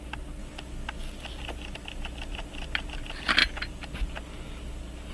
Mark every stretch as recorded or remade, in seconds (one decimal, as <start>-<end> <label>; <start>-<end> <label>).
0.0-5.1 recorded